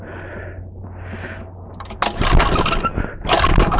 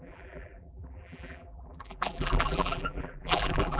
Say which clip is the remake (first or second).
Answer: second